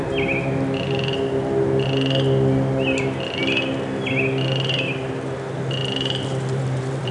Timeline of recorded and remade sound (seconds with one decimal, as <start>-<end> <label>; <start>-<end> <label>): 0.0-5.8 recorded; 5.8-7.1 remade